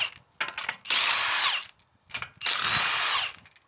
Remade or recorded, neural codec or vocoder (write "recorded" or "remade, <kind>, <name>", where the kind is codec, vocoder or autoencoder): recorded